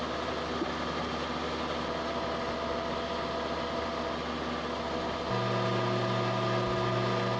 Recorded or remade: recorded